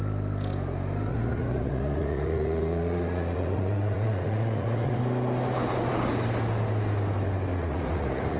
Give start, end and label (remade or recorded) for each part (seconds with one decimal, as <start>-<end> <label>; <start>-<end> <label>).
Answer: 0.0-1.1 recorded; 1.1-5.0 remade; 5.0-7.5 recorded; 7.5-8.4 remade